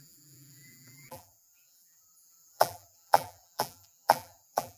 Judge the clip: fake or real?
fake